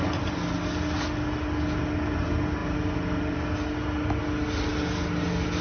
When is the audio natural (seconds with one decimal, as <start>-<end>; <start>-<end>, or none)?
0.0-5.6